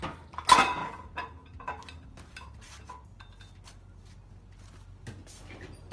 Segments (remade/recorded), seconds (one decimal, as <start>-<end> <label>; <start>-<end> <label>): 0.0-5.9 recorded